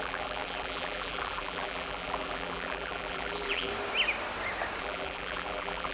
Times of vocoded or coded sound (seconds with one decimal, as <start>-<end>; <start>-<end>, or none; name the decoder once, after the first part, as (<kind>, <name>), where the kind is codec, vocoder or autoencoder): 0.0-3.7 (vocoder, BigVGAN v2); 4.8-5.9